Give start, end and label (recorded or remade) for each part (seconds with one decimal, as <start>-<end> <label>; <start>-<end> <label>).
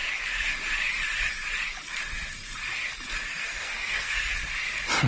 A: 0.0-3.3 recorded; 3.3-4.3 remade; 4.3-5.1 recorded